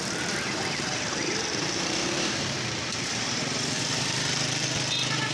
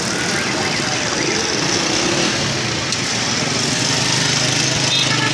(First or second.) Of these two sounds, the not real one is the first